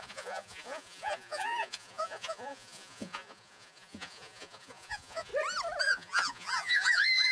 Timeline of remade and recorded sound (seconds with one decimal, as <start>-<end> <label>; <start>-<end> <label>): 0.0-5.3 remade; 5.3-5.8 recorded; 5.8-7.3 remade